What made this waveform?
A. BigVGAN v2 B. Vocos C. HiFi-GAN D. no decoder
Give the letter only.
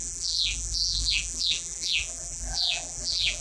A